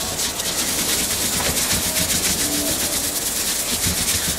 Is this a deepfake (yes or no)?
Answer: no